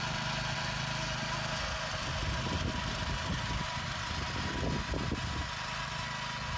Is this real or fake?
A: real